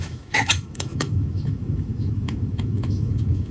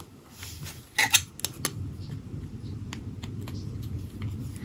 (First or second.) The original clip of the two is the second